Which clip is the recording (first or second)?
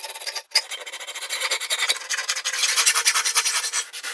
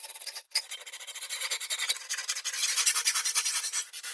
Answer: first